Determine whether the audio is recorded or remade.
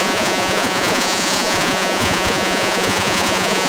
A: remade